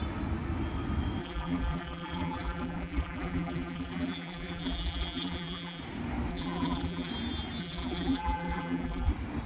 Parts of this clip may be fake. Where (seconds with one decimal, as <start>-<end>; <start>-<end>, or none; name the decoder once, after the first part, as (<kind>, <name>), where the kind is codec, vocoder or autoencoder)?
1.2-5.8 (vocoder, BigVGAN v2); 6.3-7.1; 7.6-9.1